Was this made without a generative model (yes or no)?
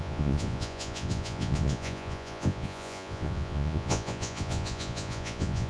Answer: no